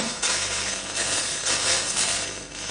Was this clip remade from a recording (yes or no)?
yes